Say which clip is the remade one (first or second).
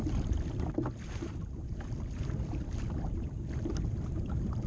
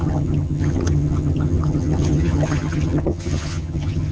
second